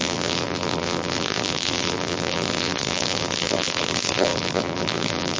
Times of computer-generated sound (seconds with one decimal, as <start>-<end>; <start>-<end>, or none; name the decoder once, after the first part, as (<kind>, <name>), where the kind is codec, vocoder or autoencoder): 0.0-5.4 (vocoder, BigVGAN v2)